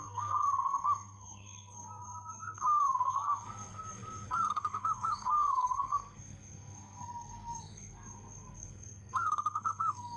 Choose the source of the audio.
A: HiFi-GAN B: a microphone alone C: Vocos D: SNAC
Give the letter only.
D